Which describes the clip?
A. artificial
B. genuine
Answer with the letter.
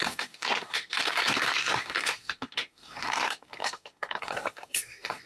A